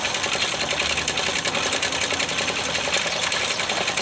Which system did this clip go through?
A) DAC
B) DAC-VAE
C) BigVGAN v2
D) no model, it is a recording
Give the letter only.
D